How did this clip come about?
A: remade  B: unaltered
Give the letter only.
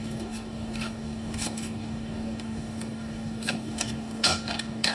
A